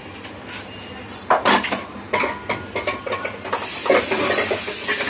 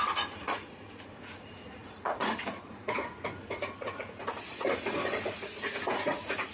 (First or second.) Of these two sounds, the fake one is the second